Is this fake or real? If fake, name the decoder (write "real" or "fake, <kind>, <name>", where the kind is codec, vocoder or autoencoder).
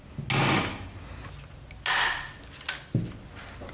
real